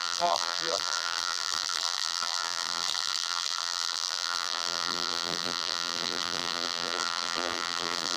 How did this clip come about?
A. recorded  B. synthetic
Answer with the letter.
B